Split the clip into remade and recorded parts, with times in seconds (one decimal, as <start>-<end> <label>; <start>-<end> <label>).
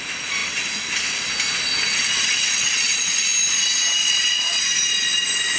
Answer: 0.0-1.9 recorded; 1.9-3.2 remade; 3.2-4.0 recorded; 4.0-4.6 remade; 4.6-5.6 recorded